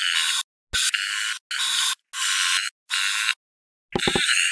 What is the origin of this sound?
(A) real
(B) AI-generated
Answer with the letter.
A